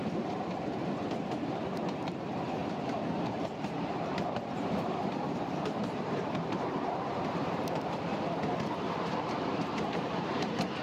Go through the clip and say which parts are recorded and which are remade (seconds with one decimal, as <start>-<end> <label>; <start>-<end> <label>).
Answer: 0.0-2.6 remade; 2.6-3.1 recorded; 3.1-8.1 remade; 8.1-9.4 recorded; 9.4-10.8 remade

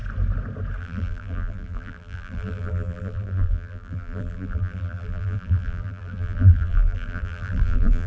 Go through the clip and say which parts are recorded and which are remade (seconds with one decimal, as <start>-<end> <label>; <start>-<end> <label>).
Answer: 0.0-0.8 recorded; 0.8-8.1 remade

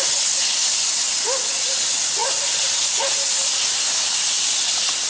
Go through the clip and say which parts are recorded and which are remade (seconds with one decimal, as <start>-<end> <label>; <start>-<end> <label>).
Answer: 0.0-0.6 recorded; 0.6-1.2 remade; 1.2-2.2 recorded; 2.2-3.0 remade; 3.0-3.4 recorded; 3.4-4.5 remade; 4.5-5.1 recorded

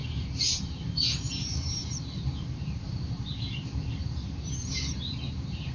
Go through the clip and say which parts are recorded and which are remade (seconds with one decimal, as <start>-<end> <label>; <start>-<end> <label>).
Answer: 0.0-5.7 remade

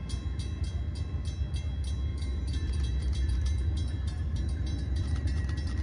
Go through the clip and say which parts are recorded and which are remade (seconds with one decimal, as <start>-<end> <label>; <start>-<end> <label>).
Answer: 0.0-2.1 recorded; 2.1-5.8 remade

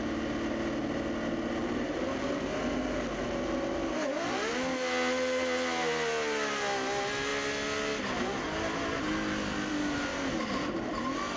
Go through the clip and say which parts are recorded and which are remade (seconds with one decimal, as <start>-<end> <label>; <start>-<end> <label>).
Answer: 0.0-1.6 recorded; 1.6-3.9 remade; 3.9-11.4 recorded